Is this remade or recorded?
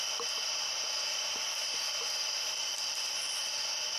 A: remade